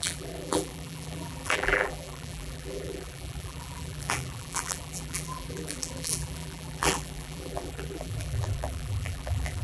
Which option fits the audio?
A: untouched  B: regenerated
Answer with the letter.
B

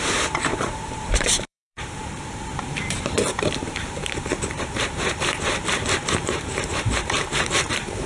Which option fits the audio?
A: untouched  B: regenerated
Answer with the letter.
B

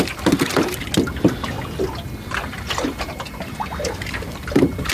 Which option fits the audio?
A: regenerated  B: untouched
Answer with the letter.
B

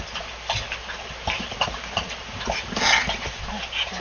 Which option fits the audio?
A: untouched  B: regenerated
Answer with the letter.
A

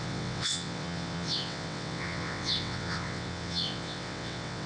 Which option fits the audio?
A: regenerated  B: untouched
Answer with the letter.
A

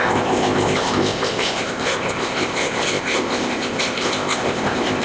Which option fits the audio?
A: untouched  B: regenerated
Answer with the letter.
B